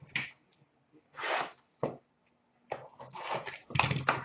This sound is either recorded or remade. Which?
recorded